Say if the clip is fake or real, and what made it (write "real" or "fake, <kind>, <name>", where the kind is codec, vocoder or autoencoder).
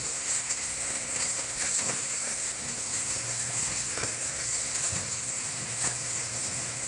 fake, codec, SNAC